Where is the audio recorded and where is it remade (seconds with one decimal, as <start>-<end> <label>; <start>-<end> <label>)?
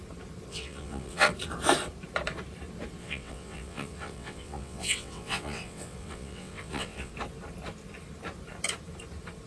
0.0-0.5 recorded; 0.5-1.3 remade; 1.3-3.0 recorded; 3.0-7.1 remade; 7.1-9.5 recorded